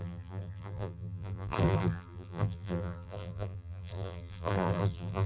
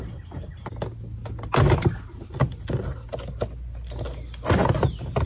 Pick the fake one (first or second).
first